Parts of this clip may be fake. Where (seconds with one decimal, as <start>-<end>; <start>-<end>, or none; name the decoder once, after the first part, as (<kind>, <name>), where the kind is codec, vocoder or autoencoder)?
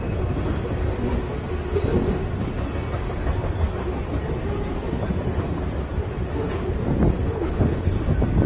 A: 7.2-7.9 (codec, HILCodec)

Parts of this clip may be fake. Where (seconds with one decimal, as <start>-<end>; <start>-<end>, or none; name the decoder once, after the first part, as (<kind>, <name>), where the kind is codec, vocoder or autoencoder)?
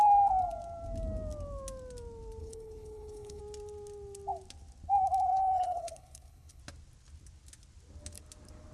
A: 2.4-3.4 (codec, HILCodec); 5.3-6.6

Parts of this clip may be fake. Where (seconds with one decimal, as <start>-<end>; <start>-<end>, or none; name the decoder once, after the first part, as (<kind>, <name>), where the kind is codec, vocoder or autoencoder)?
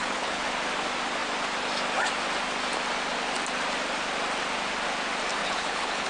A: 0.0-0.5 (codec, HILCodec); 5.4-6.1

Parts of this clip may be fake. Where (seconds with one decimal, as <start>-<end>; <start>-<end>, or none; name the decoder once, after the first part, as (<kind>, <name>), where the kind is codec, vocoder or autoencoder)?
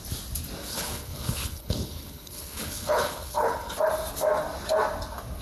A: 0.7-3.9 (codec, HILCodec)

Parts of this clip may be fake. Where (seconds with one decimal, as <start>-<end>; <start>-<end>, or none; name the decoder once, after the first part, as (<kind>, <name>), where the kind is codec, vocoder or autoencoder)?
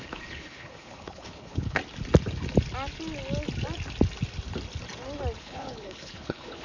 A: 0.0-1.8 (codec, HILCodec); 5.4-6.6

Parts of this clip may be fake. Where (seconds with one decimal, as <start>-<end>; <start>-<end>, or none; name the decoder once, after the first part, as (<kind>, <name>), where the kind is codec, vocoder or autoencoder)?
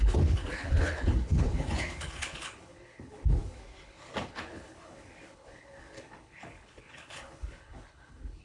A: 0.0-8.4 (codec, HILCodec)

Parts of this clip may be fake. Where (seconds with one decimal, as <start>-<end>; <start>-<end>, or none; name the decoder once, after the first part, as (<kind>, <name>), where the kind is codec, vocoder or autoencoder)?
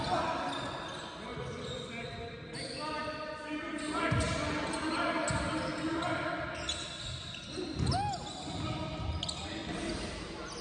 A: none